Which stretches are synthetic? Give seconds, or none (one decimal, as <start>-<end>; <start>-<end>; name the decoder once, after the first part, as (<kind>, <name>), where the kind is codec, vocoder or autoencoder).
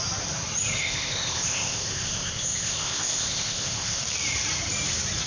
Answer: 0.8-4.0 (codec, ZipCodec)